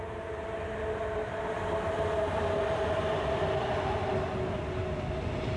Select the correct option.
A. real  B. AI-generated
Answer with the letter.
A